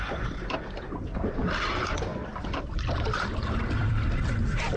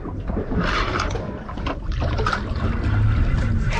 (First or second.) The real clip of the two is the second